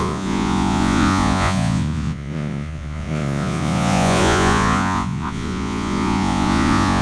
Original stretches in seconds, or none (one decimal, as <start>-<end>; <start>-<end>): none